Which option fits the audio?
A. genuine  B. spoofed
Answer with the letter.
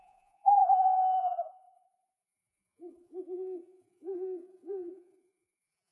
B